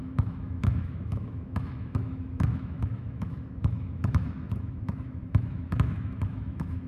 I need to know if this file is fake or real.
fake